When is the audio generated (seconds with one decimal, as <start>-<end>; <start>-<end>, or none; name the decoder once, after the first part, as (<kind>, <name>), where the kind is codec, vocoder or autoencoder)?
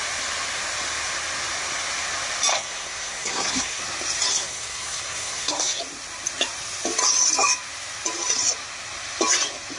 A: 2.5-3.8 (codec, SNAC); 4.3-5.8